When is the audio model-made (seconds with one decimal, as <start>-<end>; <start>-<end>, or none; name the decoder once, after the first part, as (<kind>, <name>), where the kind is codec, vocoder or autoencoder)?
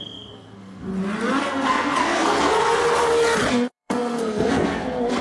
0.0-0.9 (codec, SNAC); 1.4-2.8; 3.5-5.2